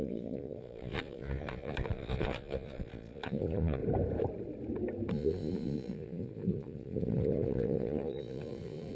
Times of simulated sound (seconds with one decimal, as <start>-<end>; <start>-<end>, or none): 0.0-3.8; 5.1-8.9